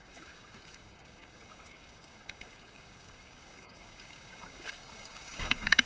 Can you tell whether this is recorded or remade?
remade